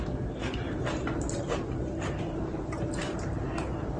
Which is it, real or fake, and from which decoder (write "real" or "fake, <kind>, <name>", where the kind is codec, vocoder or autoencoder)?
real